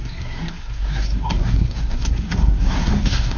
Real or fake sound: fake